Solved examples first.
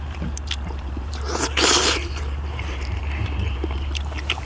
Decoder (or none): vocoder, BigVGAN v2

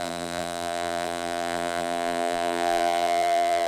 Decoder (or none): vocoder, BigVGAN v2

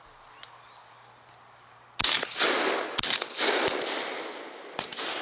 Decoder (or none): none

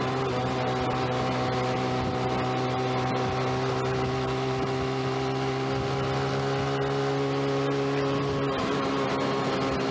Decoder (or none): none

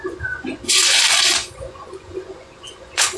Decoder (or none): vocoder, Vocos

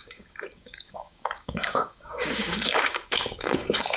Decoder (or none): codec, DAC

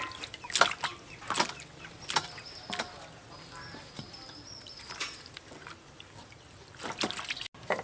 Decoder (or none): none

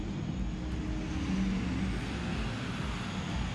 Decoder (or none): none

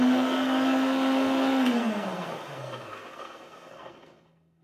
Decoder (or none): codec, SNAC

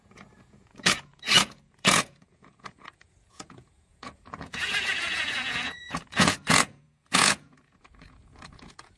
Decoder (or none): vocoder, Vocos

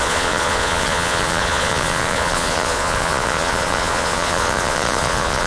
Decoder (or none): vocoder, Vocos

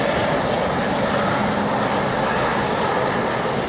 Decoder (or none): none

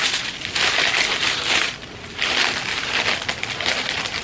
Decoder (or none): none